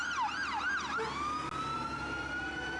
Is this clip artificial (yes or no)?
no